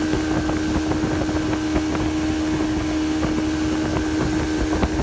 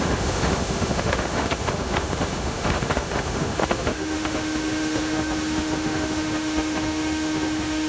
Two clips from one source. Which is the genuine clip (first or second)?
first